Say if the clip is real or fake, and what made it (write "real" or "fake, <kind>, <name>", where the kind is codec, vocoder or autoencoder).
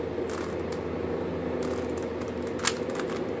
real